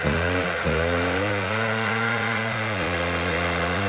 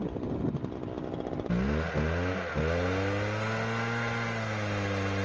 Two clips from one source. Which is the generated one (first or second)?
first